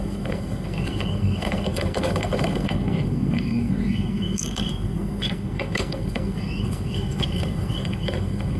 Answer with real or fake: fake